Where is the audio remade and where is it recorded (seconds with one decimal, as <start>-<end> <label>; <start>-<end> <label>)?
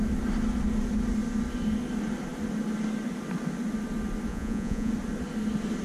0.0-4.3 recorded; 4.3-4.9 remade; 4.9-5.8 recorded